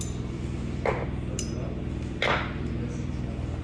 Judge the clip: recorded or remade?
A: recorded